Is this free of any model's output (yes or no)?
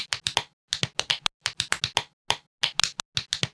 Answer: yes